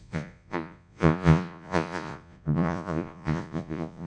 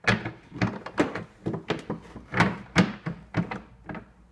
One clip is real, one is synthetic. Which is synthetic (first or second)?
first